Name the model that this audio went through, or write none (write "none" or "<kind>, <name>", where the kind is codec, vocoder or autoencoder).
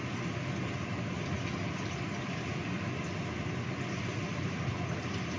none